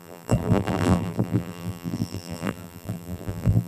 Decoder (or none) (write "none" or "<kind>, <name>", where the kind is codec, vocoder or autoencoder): vocoder, BigVGAN v2